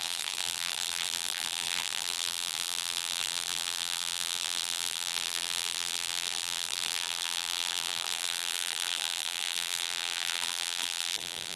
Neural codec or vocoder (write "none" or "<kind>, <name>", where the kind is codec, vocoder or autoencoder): vocoder, BigVGAN v2